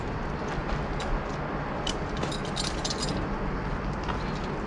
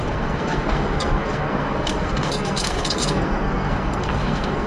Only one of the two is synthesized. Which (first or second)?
second